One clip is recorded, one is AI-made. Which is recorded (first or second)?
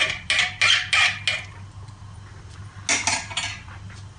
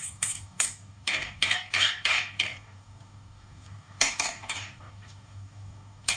first